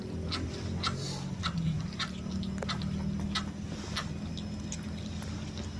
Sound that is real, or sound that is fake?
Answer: real